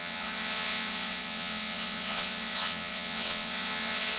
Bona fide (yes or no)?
no